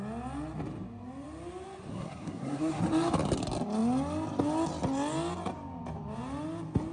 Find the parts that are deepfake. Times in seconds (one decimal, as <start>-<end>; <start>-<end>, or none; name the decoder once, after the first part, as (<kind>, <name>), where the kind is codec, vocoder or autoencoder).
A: 1.9-2.8 (codec, SNAC)